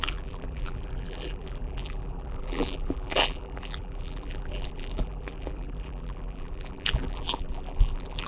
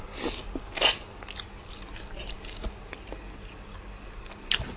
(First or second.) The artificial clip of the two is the first